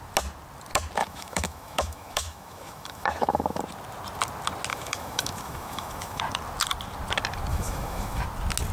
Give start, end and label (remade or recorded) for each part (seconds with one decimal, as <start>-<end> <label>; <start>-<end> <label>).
0.0-1.0 recorded; 1.0-3.6 remade; 3.6-4.7 recorded; 4.7-6.2 remade; 6.2-7.5 recorded; 7.5-8.2 remade; 8.2-8.7 recorded